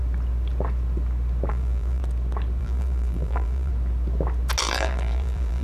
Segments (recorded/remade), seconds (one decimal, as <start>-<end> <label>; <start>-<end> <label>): 0.0-1.5 recorded; 1.5-2.0 remade; 2.0-2.6 recorded; 2.6-3.7 remade; 3.7-4.6 recorded; 4.6-5.6 remade